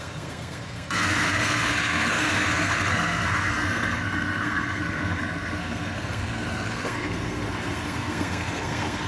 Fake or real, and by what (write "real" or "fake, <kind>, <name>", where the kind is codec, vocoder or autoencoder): fake, codec, SNAC